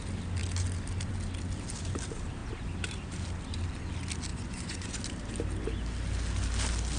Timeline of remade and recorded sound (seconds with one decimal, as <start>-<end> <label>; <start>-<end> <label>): 0.0-4.3 recorded; 4.3-5.0 remade; 5.0-7.0 recorded